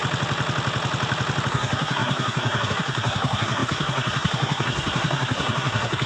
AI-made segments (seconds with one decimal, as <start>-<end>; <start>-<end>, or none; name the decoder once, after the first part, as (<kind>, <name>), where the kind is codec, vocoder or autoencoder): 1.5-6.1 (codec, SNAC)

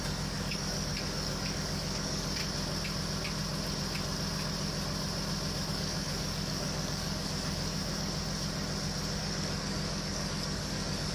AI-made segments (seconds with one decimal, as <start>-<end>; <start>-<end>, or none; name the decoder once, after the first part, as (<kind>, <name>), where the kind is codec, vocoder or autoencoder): 0.0-2.4 (codec, DAC); 5.7-7.8; 9.2-11.1

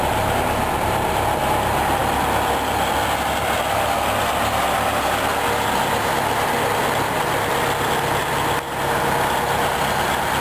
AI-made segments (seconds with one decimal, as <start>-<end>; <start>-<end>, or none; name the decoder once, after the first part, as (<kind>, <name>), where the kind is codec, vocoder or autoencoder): none

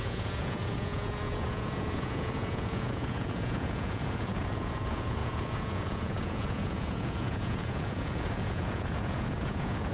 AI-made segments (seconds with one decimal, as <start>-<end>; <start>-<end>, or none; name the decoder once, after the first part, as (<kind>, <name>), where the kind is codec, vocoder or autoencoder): 0.0-9.9 (vocoder, Vocos)

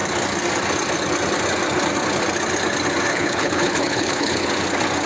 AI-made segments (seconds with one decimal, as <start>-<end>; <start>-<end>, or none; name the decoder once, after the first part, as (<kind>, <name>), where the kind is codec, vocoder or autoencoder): 3.1-4.5 (codec, HILCodec)

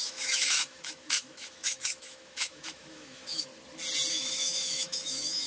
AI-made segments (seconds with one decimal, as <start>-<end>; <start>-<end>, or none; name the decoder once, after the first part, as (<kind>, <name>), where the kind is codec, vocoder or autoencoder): 0.0-3.5 (autoencoder, DAC-VAE); 4.1-5.5